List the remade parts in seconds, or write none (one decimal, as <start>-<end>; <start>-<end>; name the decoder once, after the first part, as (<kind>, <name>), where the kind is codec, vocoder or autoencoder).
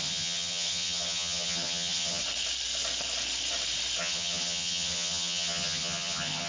0.0-2.2 (vocoder, HiFi-GAN); 4.0-6.5